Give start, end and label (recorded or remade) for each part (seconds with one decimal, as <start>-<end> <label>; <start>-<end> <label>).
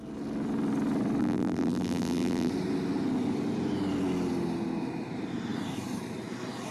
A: 0.0-1.2 recorded; 1.2-2.5 remade; 2.5-6.7 recorded